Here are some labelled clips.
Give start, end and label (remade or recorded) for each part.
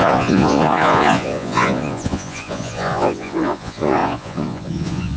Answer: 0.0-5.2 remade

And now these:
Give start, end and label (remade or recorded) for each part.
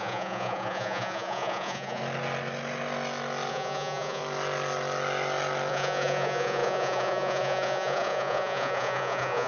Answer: 0.0-2.0 remade; 2.0-3.5 recorded; 3.5-4.2 remade; 4.2-5.7 recorded; 5.7-9.5 remade